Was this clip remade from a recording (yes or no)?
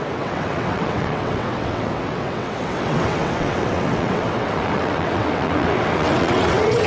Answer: yes